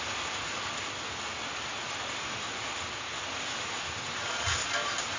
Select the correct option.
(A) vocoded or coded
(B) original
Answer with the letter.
B